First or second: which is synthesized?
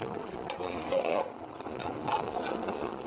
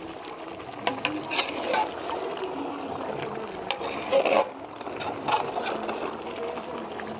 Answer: first